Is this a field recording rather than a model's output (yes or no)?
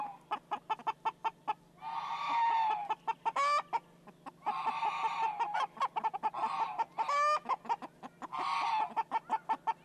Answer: yes